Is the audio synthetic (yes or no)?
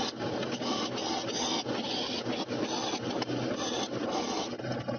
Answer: no